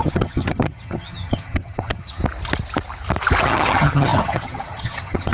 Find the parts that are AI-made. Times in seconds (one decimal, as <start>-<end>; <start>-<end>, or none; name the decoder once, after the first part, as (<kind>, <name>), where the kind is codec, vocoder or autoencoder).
0.0-2.2 (vocoder, HiFi-GAN); 3.4-5.3

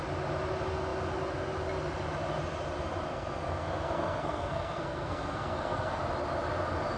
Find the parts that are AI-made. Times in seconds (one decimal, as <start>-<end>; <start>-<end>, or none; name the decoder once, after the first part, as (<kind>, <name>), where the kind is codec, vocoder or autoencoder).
3.1-6.0 (codec, SNAC)